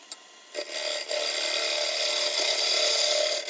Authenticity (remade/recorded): recorded